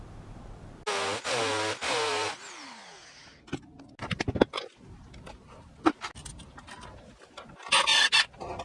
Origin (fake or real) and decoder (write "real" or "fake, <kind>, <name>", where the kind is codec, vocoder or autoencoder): real